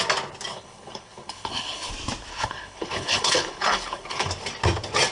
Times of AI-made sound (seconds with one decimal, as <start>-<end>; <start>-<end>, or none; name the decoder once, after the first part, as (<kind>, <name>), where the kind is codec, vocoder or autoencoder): 0.5-1.9 (codec, HILCodec); 2.3-4.3